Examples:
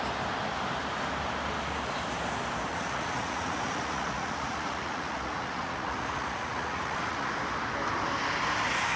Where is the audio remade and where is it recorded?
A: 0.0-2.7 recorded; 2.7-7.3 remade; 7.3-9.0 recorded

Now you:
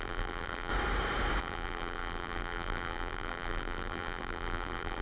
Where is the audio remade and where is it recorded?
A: 0.0-0.7 remade; 0.7-1.4 recorded; 1.4-5.0 remade

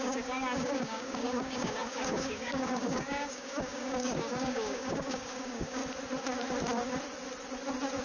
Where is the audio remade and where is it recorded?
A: 0.0-5.8 remade; 5.8-8.0 recorded

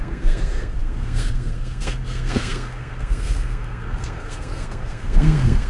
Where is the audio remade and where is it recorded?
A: 0.0-5.7 remade